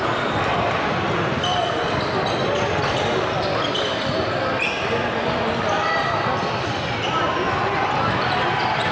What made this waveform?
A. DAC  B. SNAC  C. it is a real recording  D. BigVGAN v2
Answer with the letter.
C